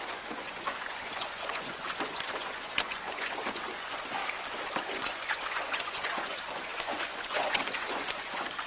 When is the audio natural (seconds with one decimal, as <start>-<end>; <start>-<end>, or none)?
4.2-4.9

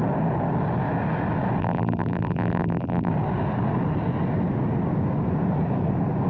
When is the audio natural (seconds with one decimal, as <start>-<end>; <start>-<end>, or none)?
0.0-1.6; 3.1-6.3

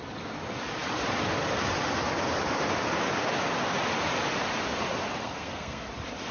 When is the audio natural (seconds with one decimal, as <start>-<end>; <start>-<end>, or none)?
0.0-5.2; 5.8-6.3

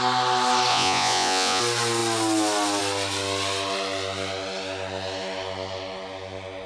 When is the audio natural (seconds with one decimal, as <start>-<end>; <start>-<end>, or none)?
0.0-0.7; 1.6-6.7